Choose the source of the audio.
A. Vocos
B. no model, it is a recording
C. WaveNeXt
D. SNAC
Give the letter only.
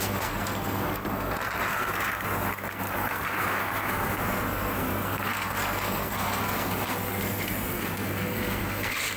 D